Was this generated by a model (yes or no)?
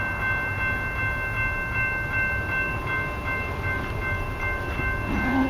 no